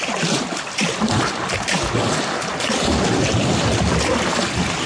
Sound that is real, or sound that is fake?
real